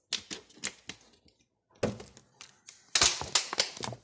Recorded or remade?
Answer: recorded